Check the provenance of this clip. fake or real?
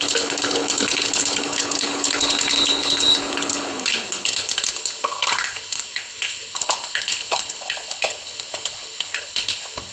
fake